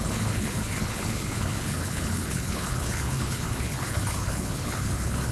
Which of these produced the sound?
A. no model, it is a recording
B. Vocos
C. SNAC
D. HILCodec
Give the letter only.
D